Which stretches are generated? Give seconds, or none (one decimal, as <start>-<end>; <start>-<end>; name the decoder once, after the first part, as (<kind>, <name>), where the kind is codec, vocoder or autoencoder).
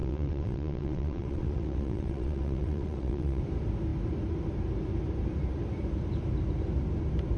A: 0.0-3.4 (vocoder, WaveNeXt)